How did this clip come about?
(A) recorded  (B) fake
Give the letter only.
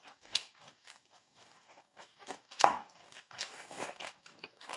B